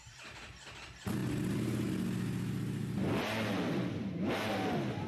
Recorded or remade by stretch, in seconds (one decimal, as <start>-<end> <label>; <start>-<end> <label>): 0.0-0.7 remade; 0.7-5.1 recorded